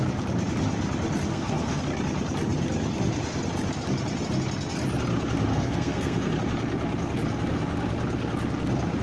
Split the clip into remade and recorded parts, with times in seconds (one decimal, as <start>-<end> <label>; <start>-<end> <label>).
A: 0.0-1.3 recorded; 1.3-1.8 remade; 1.8-5.5 recorded; 5.5-6.3 remade; 6.3-9.0 recorded